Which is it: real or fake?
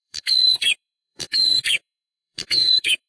fake